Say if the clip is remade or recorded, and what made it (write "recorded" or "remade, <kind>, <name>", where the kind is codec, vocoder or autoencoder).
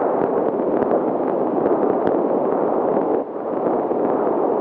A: recorded